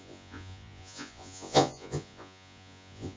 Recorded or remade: remade